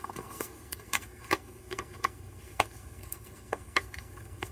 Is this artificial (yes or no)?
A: yes